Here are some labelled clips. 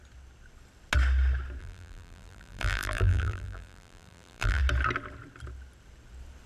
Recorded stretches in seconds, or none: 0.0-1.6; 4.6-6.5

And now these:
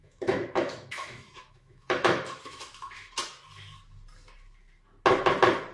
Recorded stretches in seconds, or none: 3.1-5.7

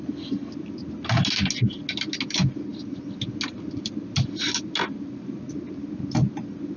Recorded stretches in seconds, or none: 0.0-6.8

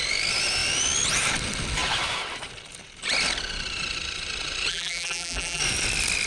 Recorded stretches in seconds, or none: 0.0-4.7; 5.6-6.3

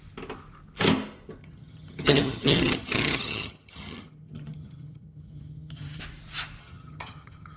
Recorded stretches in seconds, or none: 0.0-1.4; 6.0-6.6

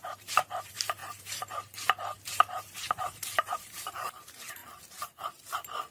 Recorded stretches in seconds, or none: 4.6-5.9

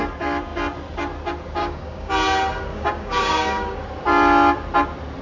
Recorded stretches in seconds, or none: 0.0-1.6; 2.1-2.7; 3.8-5.2